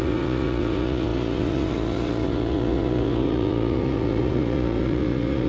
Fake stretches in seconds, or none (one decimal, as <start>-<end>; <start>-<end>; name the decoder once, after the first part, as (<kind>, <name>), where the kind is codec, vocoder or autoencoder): 0.0-5.5 (vocoder, Vocos)

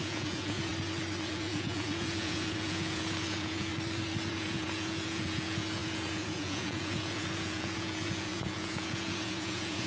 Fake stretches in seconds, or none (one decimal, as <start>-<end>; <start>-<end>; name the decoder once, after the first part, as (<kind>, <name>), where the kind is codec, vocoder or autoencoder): 0.0-0.7 (vocoder, Vocos); 1.3-3.7; 4.3-9.9